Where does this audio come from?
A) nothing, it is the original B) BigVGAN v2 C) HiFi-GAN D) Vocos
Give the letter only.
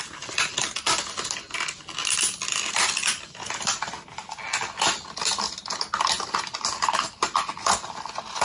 A